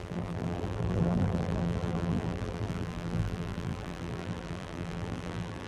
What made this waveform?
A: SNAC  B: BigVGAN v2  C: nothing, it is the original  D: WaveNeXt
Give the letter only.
B